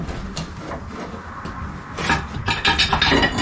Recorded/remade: recorded